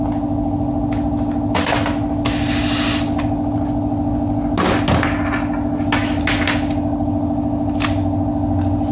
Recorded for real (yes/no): yes